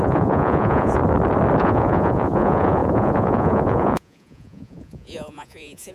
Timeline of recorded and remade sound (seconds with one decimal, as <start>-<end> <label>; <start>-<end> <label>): 0.0-1.0 remade; 1.0-1.6 recorded; 1.6-5.9 remade